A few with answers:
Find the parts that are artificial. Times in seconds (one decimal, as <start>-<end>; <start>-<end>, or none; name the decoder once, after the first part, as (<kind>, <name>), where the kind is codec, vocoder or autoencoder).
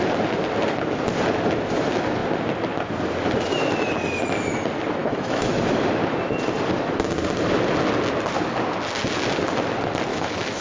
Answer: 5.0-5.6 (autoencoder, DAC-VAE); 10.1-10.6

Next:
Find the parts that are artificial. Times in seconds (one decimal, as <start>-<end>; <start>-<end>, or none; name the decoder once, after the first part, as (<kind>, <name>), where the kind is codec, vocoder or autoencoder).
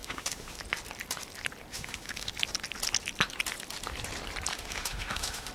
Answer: 0.0-0.6 (autoencoder, DAC-VAE); 1.7-2.3; 4.5-5.5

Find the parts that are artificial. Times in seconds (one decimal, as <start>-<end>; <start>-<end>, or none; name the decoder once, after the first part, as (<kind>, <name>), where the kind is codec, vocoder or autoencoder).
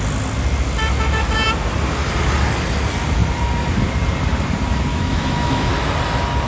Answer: 4.9-5.7 (autoencoder, DAC-VAE)